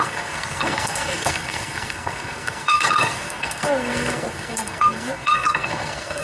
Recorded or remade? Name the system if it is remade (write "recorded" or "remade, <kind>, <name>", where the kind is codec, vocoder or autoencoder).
remade, codec, SNAC